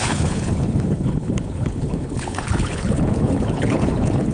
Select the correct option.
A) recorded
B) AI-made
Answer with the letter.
B